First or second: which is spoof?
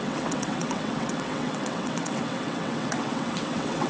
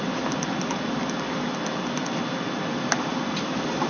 first